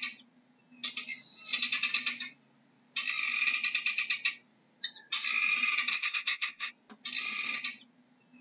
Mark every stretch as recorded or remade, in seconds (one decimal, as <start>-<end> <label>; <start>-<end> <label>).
0.0-5.9 recorded; 5.9-6.7 remade; 6.7-8.4 recorded